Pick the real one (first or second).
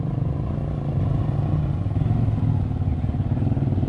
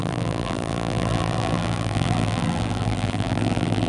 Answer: first